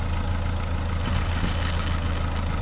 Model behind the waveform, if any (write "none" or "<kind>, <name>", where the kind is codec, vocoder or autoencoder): none